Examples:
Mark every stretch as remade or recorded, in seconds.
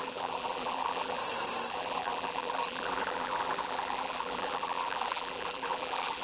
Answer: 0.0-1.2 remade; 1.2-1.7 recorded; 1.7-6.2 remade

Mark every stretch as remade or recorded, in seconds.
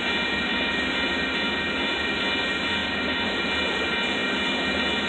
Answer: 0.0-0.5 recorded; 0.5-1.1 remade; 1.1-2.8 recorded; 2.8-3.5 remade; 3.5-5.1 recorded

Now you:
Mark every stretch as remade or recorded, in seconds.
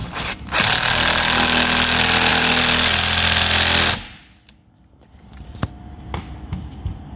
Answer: 0.0-0.5 remade; 0.5-7.2 recorded